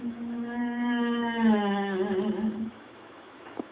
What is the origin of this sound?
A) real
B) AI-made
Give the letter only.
B